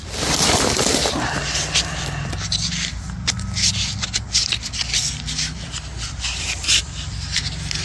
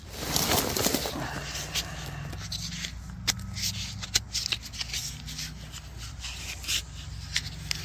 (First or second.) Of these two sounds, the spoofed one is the first